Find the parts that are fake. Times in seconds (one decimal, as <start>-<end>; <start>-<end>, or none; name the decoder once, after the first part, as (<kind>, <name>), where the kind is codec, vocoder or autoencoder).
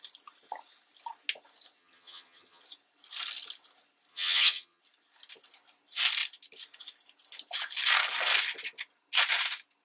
1.8-2.6 (vocoder, HiFi-GAN); 4.1-4.8